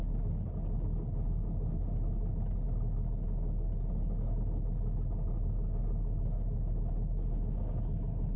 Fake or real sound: real